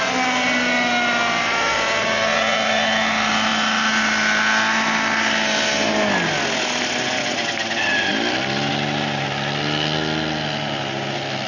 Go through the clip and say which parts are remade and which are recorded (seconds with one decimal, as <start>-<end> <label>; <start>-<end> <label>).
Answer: 0.0-11.5 recorded

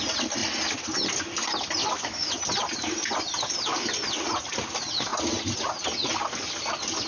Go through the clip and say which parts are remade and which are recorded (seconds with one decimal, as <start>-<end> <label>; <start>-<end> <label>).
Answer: 0.0-1.8 recorded; 1.8-2.3 remade; 2.3-7.1 recorded